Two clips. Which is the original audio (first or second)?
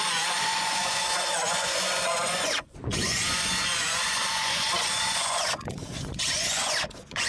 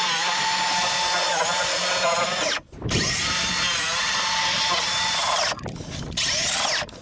second